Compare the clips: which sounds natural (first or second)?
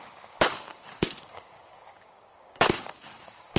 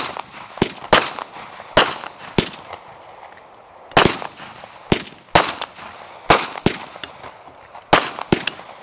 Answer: second